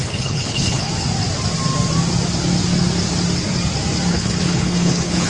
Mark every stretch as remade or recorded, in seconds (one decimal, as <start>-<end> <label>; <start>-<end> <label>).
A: 0.0-0.9 remade; 0.9-4.1 recorded; 4.1-5.3 remade